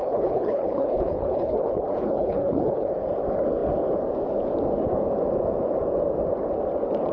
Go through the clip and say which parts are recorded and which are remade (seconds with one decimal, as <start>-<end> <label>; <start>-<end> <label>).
0.0-2.9 remade; 2.9-7.1 recorded